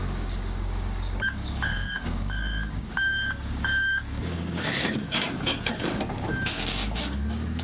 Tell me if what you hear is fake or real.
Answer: fake